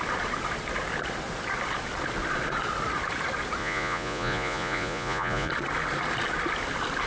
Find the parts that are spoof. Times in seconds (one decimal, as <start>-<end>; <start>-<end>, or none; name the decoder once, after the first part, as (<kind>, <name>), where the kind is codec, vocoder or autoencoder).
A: 3.6-5.5 (vocoder, Vocos)